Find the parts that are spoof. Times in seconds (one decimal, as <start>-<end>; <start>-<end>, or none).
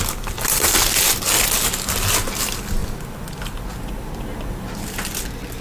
none